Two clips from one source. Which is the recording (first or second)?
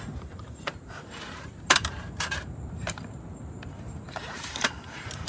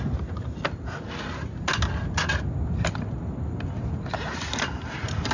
second